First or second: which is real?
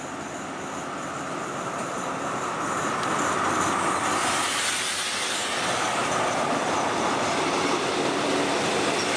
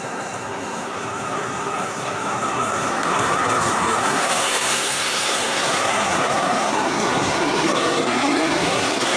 first